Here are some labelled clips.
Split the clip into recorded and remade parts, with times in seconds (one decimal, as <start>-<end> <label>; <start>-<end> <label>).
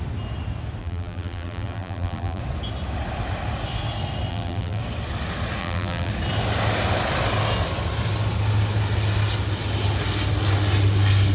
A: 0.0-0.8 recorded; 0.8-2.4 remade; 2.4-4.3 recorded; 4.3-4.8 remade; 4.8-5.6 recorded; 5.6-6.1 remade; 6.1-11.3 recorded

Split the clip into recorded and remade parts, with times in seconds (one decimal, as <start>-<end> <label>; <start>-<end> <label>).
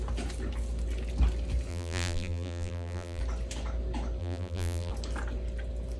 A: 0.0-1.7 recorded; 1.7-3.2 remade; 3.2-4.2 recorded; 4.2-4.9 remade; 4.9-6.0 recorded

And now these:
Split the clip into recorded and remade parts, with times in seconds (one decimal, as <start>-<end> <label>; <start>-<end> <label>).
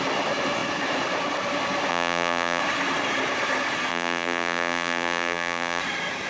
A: 0.0-1.9 recorded; 1.9-2.6 remade; 2.6-3.9 recorded; 3.9-5.8 remade; 5.8-6.3 recorded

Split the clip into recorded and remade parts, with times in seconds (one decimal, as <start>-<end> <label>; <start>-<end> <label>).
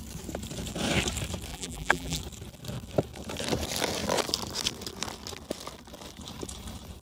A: 0.0-1.5 recorded; 1.5-2.2 remade; 2.2-7.0 recorded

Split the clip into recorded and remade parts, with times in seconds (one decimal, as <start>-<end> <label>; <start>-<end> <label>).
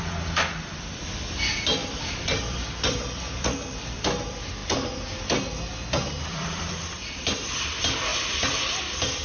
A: 0.0-4.6 remade; 4.6-6.2 recorded; 6.2-9.2 remade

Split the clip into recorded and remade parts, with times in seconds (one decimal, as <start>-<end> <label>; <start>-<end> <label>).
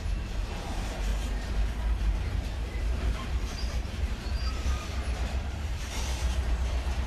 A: 0.0-1.1 remade; 1.1-1.8 recorded; 1.8-7.1 remade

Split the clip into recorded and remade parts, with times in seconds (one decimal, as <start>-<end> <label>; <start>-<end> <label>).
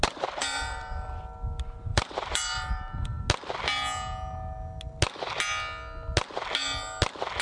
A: 0.0-0.4 recorded; 0.4-1.2 remade; 1.2-1.9 recorded; 1.9-3.2 remade; 3.2-7.4 recorded